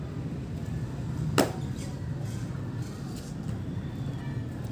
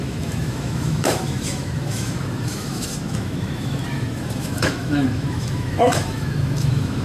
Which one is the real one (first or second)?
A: first